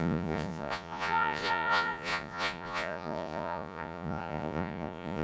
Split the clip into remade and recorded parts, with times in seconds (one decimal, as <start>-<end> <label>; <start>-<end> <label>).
0.0-5.2 remade